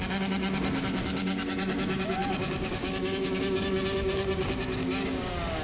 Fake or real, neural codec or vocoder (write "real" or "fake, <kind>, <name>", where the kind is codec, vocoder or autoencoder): fake, codec, DAC